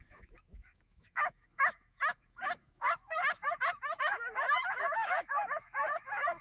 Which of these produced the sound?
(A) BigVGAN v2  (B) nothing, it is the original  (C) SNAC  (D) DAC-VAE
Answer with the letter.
D